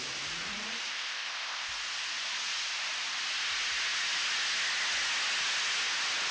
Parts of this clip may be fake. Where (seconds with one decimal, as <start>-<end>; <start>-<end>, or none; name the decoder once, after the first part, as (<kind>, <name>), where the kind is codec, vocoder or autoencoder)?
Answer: 0.9-1.7 (codec, ZipCodec)